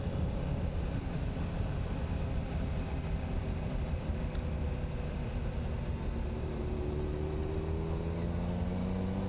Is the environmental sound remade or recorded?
recorded